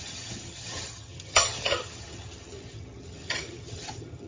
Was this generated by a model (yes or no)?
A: yes